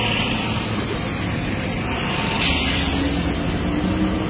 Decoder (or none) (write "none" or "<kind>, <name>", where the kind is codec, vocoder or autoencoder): none